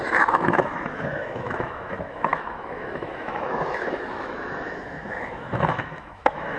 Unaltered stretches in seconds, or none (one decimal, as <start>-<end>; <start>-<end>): none